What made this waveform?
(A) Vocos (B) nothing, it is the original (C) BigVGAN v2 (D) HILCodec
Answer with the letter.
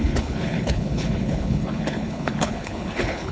D